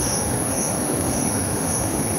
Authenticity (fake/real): fake